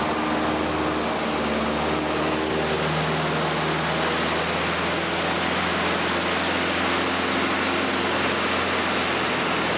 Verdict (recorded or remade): recorded